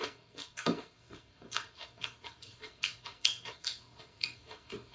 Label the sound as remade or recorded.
remade